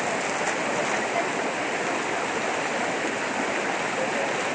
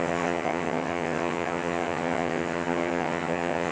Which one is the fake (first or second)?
second